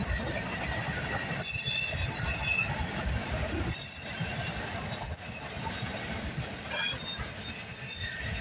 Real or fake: real